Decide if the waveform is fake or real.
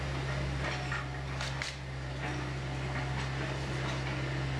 real